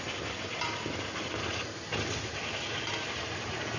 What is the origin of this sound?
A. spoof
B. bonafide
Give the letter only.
B